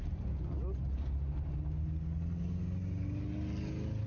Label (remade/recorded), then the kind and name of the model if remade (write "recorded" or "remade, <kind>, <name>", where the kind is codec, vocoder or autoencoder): recorded